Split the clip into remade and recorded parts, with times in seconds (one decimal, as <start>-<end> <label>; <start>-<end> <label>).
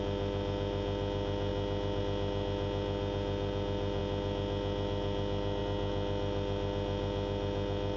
0.0-8.0 recorded